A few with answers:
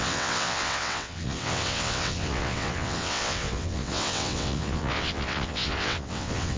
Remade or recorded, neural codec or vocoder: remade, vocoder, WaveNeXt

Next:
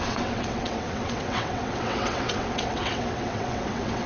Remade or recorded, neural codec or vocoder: remade, vocoder, WaveNeXt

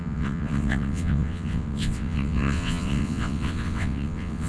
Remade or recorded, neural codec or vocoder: remade, vocoder, WaveNeXt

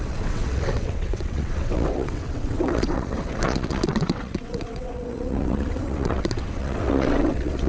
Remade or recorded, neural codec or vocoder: remade, vocoder, WaveNeXt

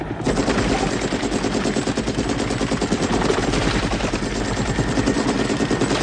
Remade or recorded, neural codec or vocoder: recorded